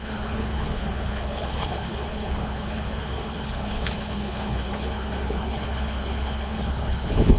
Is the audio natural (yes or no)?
no